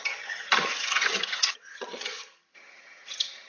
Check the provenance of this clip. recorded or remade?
remade